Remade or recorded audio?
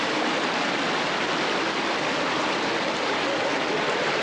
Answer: recorded